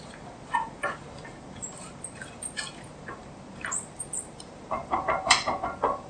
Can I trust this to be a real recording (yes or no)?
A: no